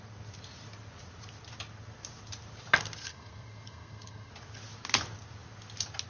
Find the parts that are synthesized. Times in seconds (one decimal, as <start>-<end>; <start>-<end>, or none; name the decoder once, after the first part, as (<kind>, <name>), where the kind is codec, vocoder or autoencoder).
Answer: 3.1-4.3 (codec, SNAC)